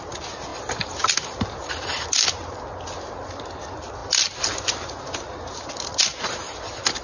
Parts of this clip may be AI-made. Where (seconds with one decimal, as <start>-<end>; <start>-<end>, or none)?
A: none